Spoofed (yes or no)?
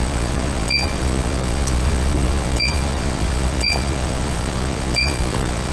yes